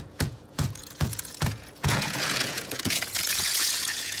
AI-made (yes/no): yes